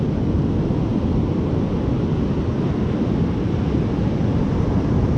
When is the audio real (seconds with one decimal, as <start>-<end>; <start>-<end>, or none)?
0.0-5.2

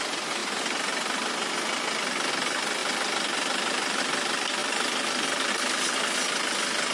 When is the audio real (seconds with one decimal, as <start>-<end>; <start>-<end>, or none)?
0.0-2.8; 4.0-4.6; 5.5-6.9

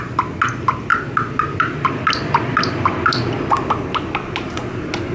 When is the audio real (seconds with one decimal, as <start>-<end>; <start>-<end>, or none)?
0.0-0.9; 4.0-5.1